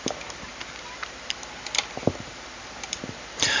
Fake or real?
fake